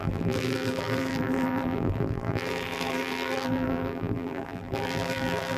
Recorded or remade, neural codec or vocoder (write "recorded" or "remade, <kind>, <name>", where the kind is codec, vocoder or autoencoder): remade, vocoder, BigVGAN v2